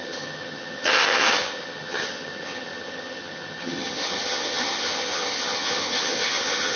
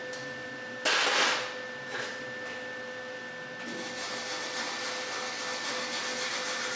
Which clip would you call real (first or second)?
second